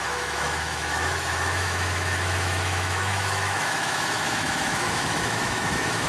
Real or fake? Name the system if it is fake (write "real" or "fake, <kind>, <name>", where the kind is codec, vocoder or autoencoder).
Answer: fake, autoencoder, DAC-VAE